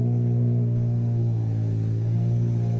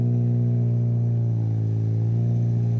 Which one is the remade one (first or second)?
first